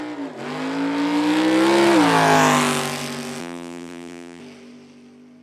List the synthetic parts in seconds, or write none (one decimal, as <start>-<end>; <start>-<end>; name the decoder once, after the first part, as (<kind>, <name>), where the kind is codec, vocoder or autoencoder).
3.4-4.4 (vocoder, BigVGAN v2)